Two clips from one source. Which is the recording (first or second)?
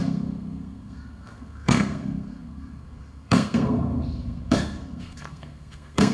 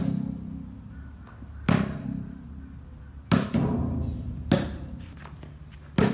second